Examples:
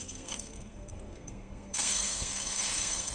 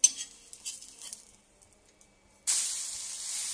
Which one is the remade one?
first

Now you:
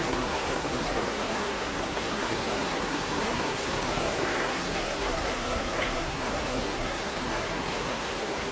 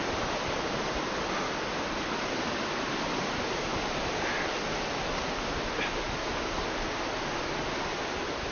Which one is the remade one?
first